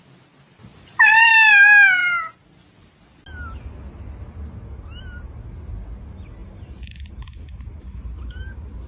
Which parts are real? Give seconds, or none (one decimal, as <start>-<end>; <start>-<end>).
0.0-0.7; 1.3-6.4